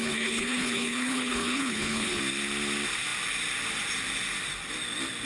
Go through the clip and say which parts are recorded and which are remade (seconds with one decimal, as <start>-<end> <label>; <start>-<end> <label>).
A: 0.0-2.2 remade; 2.2-5.3 recorded